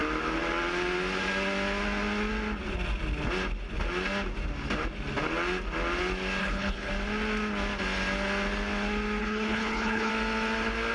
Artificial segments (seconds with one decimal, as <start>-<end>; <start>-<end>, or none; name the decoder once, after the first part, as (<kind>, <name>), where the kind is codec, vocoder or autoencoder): 6.4-6.9 (codec, HILCodec); 9.2-10.1